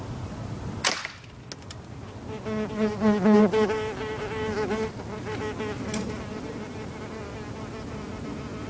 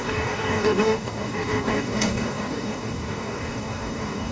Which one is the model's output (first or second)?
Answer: second